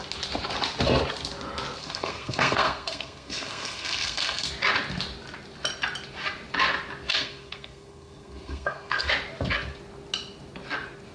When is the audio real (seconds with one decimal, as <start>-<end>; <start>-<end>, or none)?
0.0-1.8; 4.5-7.1; 9.1-11.1